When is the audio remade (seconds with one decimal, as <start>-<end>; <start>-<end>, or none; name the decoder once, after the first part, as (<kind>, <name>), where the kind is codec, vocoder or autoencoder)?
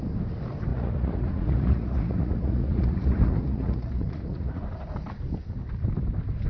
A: 0.7-4.6 (vocoder, Vocos)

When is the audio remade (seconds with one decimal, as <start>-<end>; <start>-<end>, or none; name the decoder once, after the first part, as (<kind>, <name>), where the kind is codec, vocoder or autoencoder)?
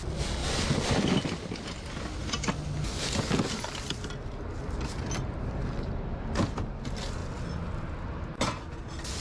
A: none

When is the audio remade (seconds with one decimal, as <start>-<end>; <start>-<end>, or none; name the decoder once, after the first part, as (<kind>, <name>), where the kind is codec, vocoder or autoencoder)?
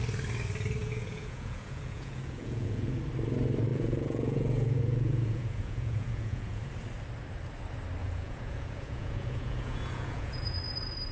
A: 0.8-3.0 (vocoder, Vocos); 3.7-6.7; 8.0-10.6